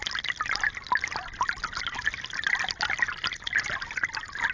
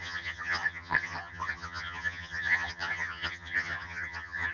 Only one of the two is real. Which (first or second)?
first